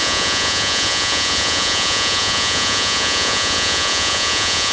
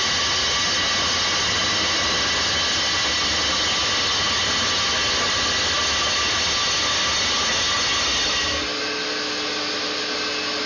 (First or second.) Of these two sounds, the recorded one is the second